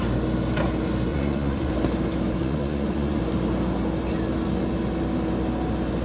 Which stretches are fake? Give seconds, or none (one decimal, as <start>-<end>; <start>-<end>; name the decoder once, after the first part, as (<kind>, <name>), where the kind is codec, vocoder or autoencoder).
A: 1.1-1.7 (vocoder, Vocos); 2.4-3.2